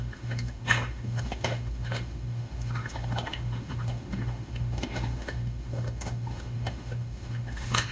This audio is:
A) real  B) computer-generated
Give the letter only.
B